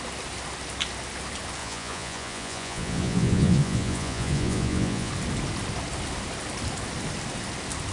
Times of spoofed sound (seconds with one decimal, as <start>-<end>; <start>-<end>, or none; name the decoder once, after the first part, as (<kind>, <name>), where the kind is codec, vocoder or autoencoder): 1.6-5.1 (vocoder, Vocos)